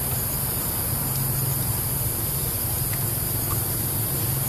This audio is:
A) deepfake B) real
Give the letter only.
B